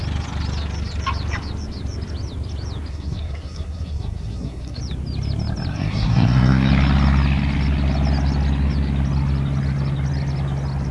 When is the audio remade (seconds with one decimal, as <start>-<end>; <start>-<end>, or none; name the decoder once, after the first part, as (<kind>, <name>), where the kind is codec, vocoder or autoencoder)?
2.9-4.8 (codec, SNAC); 5.7-6.7